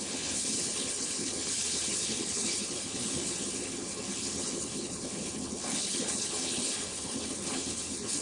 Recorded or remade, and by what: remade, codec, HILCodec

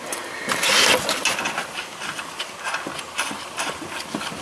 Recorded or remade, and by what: recorded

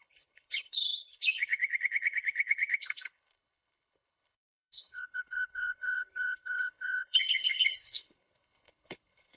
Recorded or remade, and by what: remade, codec, HILCodec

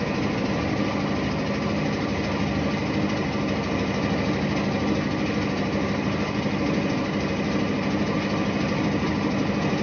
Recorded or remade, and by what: recorded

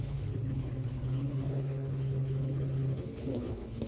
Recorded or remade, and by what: remade, codec, HILCodec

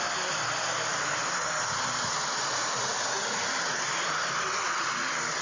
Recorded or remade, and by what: recorded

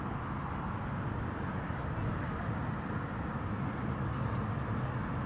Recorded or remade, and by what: recorded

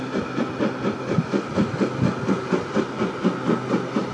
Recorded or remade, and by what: recorded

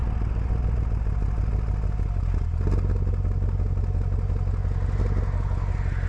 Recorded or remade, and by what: recorded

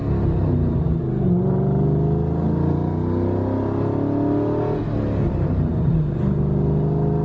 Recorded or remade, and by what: recorded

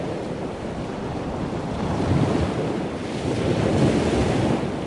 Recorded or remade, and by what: recorded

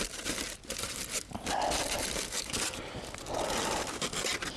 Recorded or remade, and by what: recorded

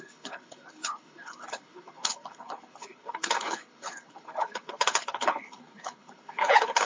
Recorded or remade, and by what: remade, codec, HILCodec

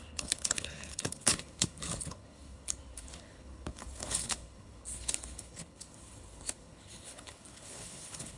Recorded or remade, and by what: remade, codec, HILCodec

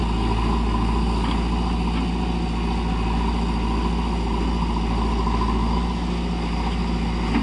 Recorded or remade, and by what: recorded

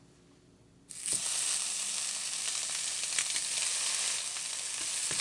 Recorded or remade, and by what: recorded